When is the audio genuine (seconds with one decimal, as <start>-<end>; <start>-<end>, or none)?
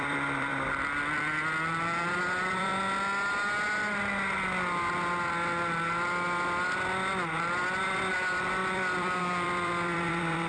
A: 0.5-2.1; 2.7-7.8